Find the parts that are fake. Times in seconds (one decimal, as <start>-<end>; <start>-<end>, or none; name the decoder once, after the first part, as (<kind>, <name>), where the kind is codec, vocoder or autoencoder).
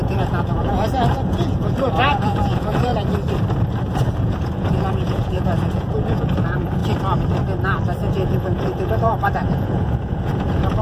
0.0-2.9 (vocoder, Vocos); 4.1-6.8; 8.1-10.8